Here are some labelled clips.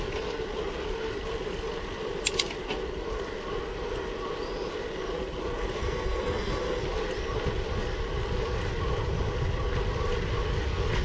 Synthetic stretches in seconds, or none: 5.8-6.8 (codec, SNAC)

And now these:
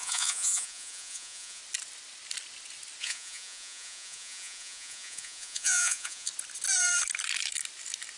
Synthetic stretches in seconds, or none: 0.0-1.6 (vocoder, Vocos); 3.0-6.3

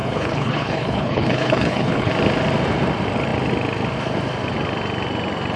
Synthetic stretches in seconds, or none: 0.0-2.1 (codec, HILCodec)

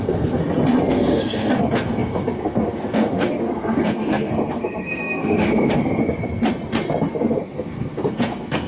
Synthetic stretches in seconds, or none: 0.0-0.4 (codec, SNAC); 0.9-6.0; 7.2-8.7

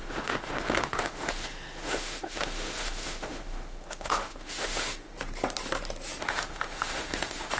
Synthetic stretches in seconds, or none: 0.0-5.1 (autoencoder, DAC-VAE); 6.2-7.6